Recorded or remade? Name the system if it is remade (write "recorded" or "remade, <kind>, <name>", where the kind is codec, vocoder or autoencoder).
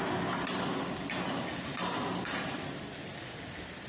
recorded